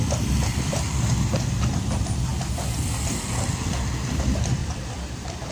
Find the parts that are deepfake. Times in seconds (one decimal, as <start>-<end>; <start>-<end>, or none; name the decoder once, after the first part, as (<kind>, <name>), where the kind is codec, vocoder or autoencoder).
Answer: 0.0-2.3 (vocoder, BigVGAN v2); 3.3-5.5